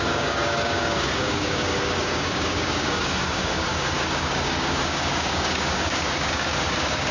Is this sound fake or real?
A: fake